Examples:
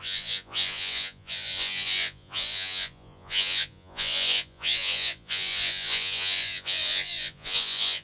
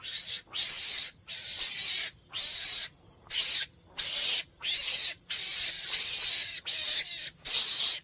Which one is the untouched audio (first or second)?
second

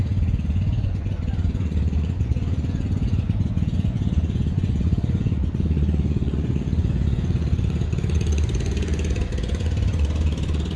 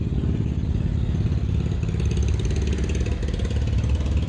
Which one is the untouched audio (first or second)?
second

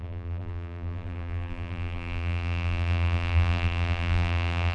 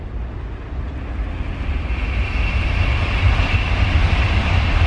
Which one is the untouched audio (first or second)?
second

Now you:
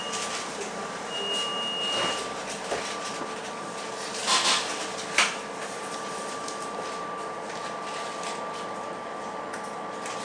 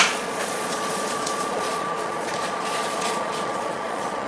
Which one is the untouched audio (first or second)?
first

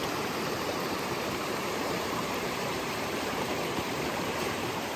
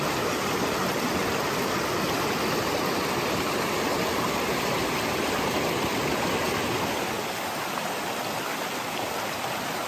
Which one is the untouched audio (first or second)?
second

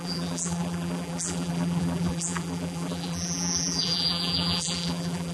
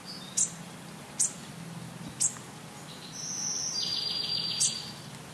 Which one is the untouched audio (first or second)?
second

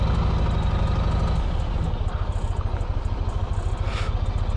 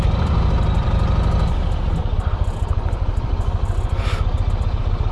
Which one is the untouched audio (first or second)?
first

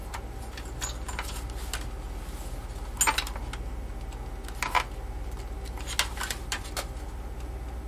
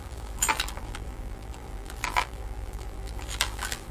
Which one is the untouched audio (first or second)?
first